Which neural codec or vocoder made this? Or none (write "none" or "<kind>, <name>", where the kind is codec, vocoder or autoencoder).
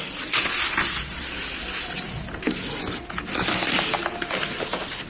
none